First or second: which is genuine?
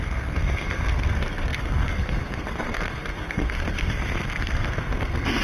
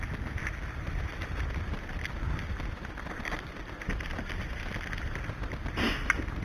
second